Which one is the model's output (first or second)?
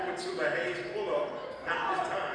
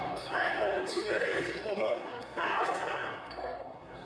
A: second